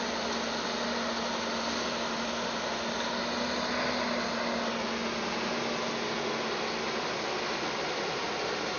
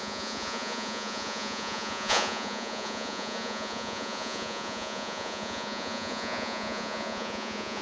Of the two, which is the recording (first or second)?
first